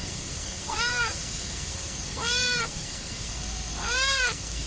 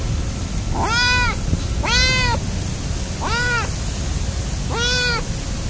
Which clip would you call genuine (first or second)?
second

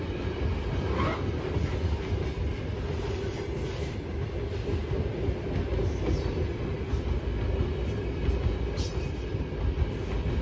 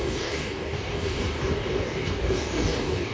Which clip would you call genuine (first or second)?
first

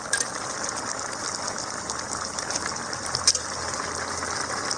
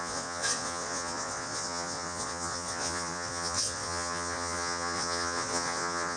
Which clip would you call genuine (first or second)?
first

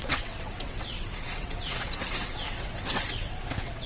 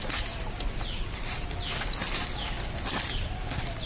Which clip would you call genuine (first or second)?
second